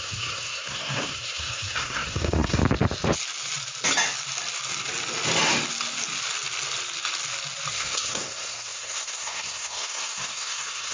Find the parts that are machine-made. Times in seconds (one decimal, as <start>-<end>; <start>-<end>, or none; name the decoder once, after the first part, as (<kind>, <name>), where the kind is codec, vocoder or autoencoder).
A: 0.0-2.6 (codec, SNAC); 7.7-10.9